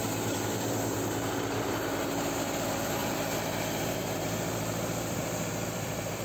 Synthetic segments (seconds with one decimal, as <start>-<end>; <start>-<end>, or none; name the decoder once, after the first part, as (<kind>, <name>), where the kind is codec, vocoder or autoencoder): 0.0-6.2 (vocoder, BigVGAN v2)